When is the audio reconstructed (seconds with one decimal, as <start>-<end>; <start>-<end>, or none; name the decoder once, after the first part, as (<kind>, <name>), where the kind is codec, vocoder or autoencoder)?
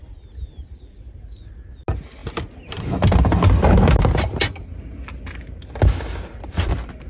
none